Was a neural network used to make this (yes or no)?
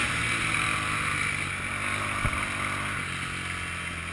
no